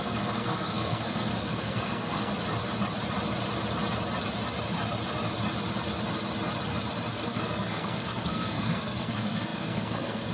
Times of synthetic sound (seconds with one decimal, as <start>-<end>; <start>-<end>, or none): 0.0-2.3; 7.1-10.3